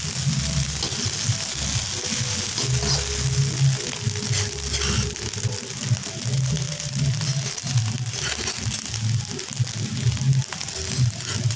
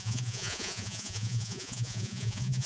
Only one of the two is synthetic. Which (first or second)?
second